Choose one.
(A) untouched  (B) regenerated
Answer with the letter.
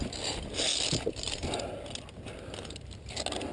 A